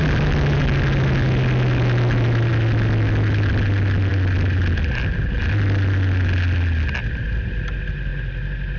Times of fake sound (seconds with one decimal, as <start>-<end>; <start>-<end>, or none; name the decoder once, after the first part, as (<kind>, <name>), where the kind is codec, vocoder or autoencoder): none